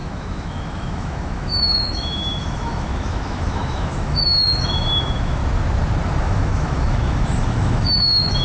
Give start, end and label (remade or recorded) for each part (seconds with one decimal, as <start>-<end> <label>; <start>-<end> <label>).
0.0-5.4 remade; 5.4-6.2 recorded; 6.2-8.4 remade